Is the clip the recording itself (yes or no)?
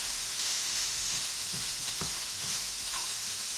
no